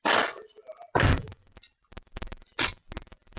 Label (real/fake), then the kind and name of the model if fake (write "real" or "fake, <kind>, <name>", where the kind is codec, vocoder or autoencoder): real